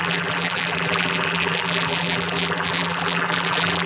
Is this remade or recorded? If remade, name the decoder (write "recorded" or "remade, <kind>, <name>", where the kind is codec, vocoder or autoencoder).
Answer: remade, vocoder, BigVGAN v2